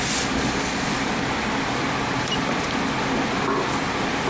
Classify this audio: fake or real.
real